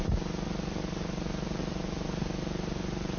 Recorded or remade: recorded